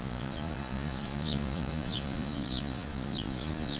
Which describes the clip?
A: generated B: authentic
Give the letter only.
A